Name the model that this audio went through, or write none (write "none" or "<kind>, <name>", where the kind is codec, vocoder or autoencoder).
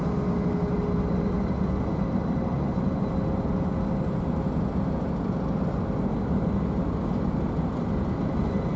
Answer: none